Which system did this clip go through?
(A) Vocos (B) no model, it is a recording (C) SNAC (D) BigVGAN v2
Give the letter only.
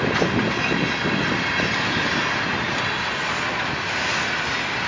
B